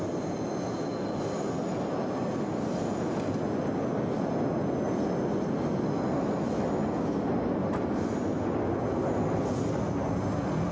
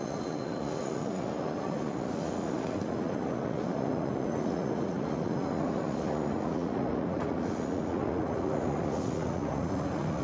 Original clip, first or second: first